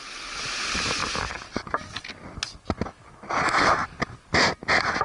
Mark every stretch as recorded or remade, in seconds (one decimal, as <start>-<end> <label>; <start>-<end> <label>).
0.0-5.0 recorded